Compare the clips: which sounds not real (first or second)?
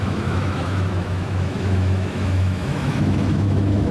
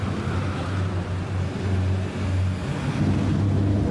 first